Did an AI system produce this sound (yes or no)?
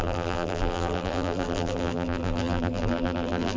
yes